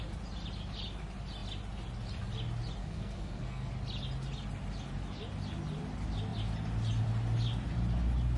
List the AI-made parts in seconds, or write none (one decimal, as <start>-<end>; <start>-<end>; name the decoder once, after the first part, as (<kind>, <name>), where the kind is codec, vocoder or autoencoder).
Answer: 2.8-3.7 (codec, SNAC)